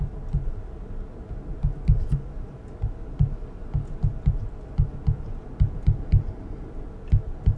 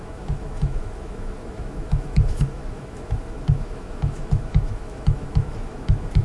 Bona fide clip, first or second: first